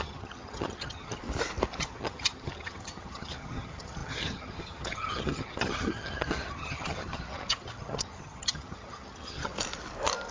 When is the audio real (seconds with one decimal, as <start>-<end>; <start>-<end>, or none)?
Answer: 1.2-1.8; 9.5-10.3